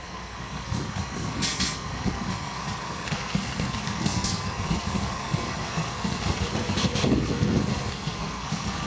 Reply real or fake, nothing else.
fake